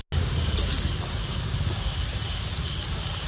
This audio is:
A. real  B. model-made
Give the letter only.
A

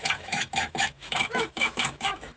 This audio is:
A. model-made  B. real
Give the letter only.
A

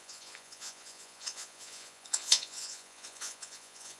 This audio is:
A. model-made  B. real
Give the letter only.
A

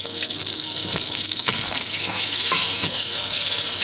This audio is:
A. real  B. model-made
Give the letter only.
B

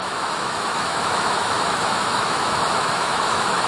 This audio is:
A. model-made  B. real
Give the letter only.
A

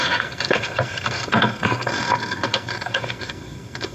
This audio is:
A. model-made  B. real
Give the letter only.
A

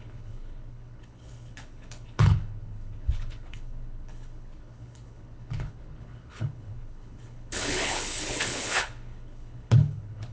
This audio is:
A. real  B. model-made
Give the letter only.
B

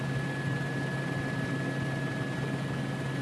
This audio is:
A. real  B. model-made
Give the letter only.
A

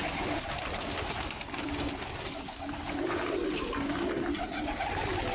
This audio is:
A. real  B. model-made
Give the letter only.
A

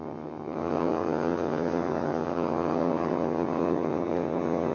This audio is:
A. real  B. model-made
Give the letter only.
B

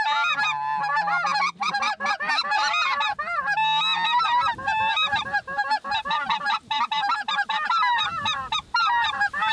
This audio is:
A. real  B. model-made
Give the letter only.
A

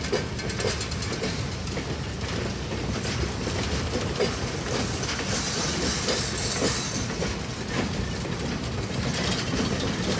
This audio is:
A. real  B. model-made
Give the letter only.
A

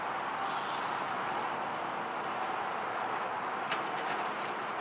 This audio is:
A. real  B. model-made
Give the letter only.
A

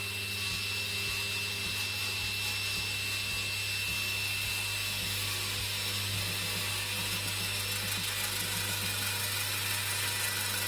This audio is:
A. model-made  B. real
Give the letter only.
B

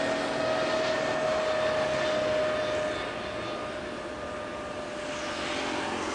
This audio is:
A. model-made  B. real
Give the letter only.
B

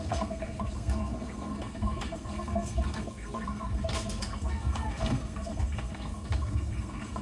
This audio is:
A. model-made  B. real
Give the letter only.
A